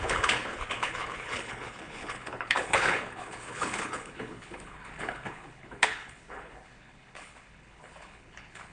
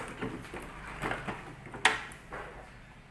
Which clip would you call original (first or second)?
second